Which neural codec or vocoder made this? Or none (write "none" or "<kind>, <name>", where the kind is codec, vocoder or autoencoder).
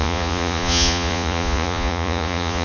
vocoder, Vocos